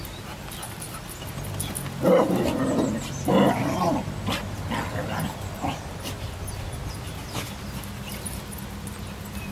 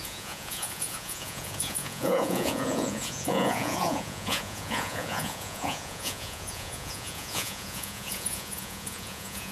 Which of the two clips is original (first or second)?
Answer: first